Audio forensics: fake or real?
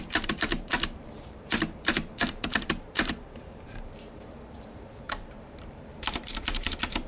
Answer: fake